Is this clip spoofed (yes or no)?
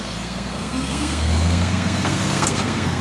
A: yes